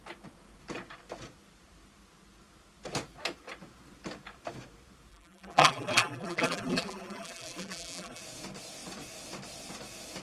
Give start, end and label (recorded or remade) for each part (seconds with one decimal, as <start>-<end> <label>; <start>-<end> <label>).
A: 0.0-5.1 recorded; 5.1-8.2 remade; 8.2-10.2 recorded